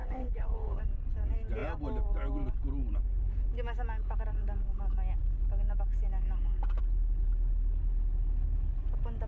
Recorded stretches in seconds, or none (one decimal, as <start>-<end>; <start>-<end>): 0.8-9.3